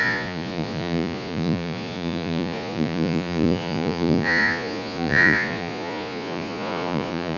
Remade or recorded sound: remade